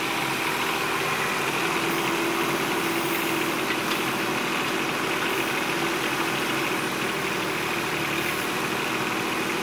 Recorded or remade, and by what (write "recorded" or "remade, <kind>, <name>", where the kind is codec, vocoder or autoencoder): recorded